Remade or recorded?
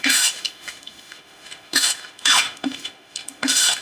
remade